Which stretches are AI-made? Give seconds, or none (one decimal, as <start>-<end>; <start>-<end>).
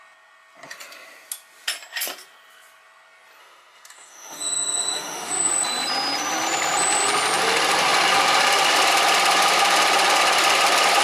3.4-5.5